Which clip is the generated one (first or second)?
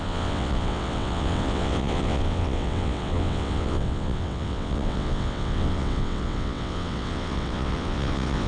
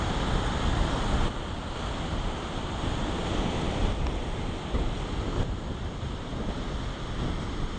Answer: first